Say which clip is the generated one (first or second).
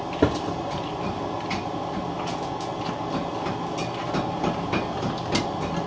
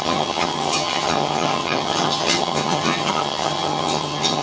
second